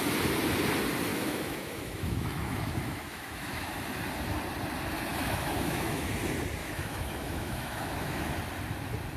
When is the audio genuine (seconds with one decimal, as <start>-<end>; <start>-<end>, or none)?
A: 0.0-1.1; 3.7-5.1; 6.1-6.6; 8.2-9.2